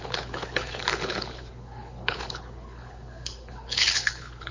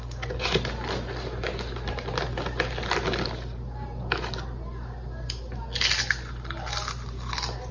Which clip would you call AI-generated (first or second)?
first